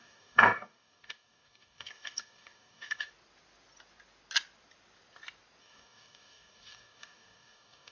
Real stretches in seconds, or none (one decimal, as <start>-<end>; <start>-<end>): 3.1-5.6